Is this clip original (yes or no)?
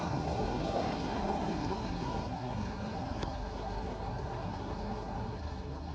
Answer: no